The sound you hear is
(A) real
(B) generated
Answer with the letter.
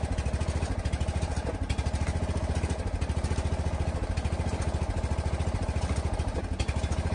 A